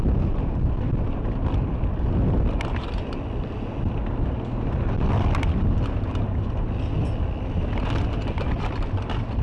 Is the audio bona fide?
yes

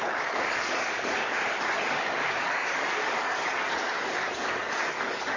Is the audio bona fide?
no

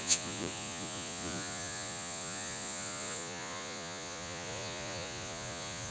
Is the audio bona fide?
no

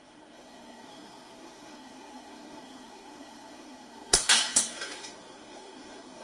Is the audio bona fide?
no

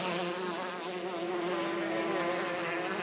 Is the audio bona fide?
yes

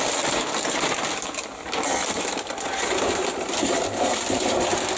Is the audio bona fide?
yes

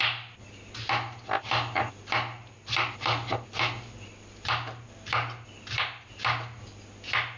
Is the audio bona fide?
yes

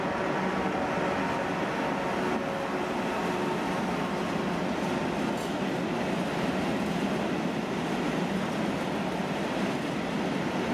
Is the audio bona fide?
yes